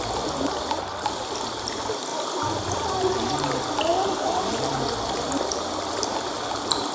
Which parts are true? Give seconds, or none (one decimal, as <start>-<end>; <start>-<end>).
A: 0.0-2.1; 3.3-3.9; 4.7-6.9